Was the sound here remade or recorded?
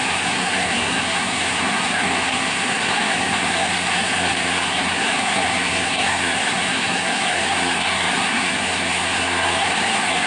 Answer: remade